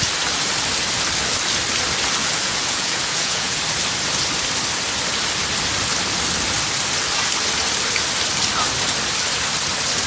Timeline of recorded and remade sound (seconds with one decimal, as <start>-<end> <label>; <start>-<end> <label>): 0.0-2.2 recorded; 2.2-3.6 remade; 3.6-10.1 recorded